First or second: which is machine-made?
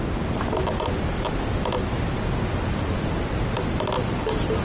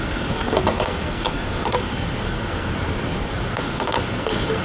second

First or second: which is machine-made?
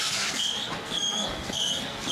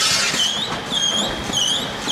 first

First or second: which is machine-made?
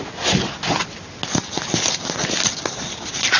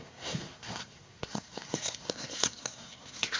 second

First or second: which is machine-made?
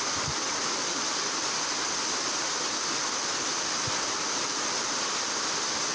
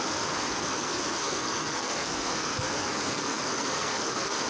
second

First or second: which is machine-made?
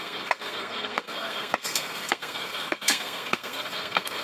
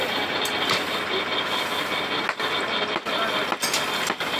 first